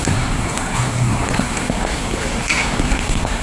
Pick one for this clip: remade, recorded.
remade